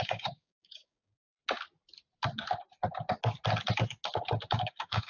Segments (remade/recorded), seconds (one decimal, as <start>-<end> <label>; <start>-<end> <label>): 0.0-1.4 remade; 1.4-4.5 recorded; 4.5-5.1 remade